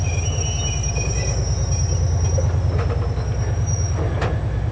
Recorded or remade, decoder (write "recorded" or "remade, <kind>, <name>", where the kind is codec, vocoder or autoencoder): recorded